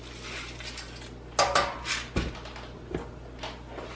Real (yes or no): yes